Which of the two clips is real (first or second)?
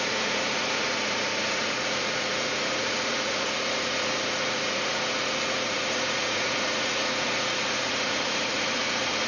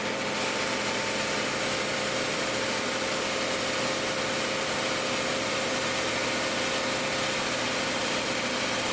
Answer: second